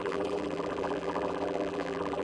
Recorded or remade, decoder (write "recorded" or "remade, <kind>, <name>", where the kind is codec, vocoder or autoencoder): remade, vocoder, BigVGAN v2